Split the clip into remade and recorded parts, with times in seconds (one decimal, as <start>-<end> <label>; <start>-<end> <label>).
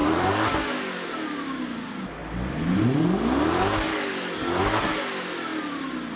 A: 0.0-1.1 remade; 1.1-3.9 recorded; 3.9-4.6 remade; 4.6-6.2 recorded